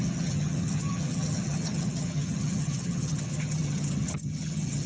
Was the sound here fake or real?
fake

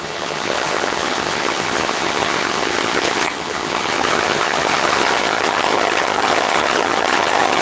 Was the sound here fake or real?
fake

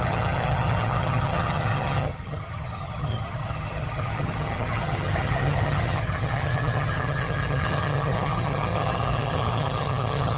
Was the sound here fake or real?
fake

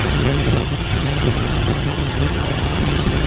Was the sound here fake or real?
fake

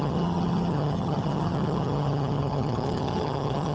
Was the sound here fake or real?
fake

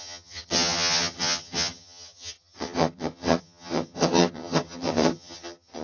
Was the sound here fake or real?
fake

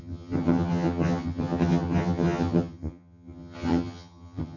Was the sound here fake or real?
fake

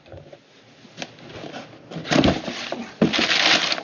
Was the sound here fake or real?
real